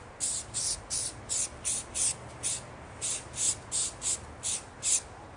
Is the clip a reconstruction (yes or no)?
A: no